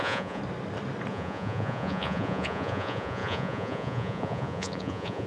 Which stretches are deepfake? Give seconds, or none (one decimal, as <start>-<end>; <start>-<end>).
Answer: 0.0-0.4; 1.1-5.3